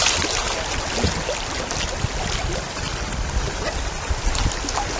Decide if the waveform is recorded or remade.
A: recorded